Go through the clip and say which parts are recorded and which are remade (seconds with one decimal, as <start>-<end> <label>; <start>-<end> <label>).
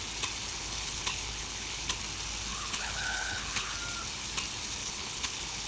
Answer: 0.0-0.6 recorded; 0.6-2.0 remade; 2.0-2.5 recorded; 2.5-3.7 remade; 3.7-4.8 recorded; 4.8-5.7 remade